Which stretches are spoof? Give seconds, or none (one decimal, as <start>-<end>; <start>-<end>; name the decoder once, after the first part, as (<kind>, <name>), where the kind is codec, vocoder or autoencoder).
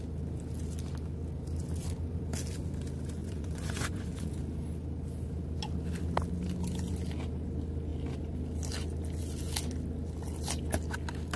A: 3.2-4.3 (vocoder, Vocos)